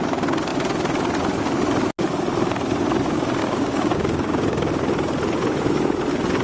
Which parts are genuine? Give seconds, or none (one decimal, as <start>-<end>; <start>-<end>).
0.0-3.4; 4.7-6.4